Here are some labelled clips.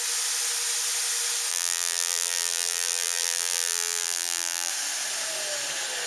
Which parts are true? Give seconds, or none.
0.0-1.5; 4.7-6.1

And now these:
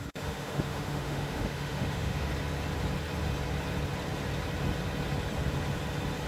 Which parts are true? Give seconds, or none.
2.3-6.3

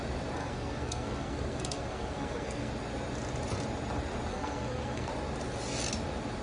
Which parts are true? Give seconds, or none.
0.0-0.4; 2.7-4.3; 5.1-6.4

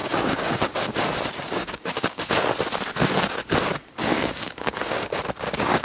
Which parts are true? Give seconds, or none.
1.0-1.6; 2.3-4.1; 5.2-5.8